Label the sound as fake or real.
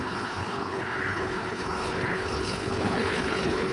fake